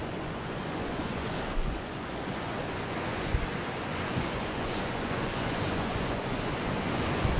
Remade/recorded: remade